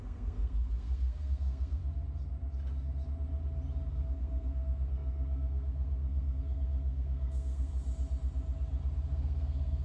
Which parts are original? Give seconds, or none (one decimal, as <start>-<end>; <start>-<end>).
1.8-3.9; 7.7-9.1